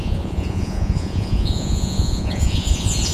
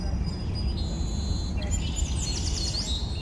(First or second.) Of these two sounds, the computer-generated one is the first